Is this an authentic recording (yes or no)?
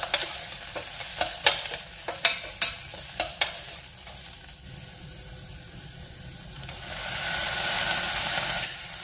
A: yes